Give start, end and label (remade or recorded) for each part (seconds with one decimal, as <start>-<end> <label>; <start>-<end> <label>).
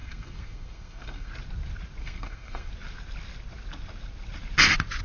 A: 0.0-1.3 remade; 1.3-2.0 recorded; 2.0-2.7 remade; 2.7-5.0 recorded